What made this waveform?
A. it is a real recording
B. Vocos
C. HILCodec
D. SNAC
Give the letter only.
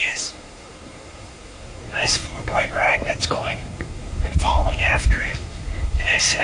D